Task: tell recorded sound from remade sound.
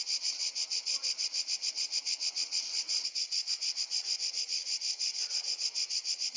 remade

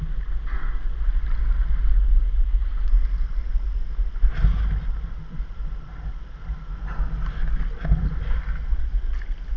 recorded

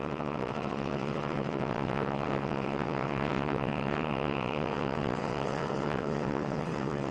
remade